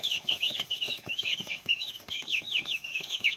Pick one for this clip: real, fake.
fake